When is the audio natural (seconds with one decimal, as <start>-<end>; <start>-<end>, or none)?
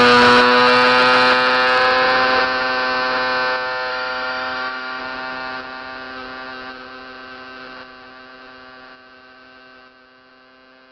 0.0-3.9; 5.0-10.9